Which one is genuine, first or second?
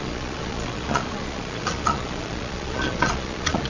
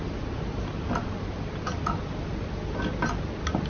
second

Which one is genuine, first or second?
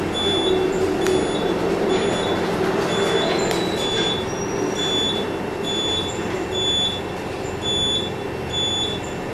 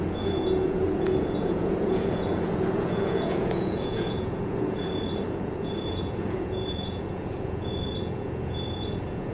first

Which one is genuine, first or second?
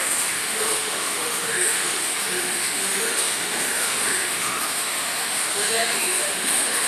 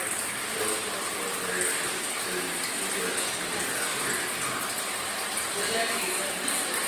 second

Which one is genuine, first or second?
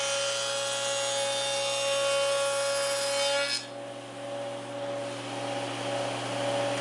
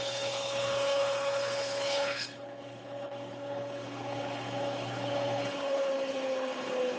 first